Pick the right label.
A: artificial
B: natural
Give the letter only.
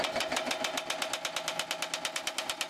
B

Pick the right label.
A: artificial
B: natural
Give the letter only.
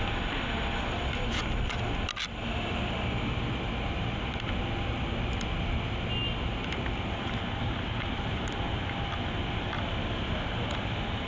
B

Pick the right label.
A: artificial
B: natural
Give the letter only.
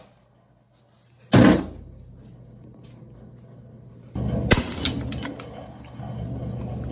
B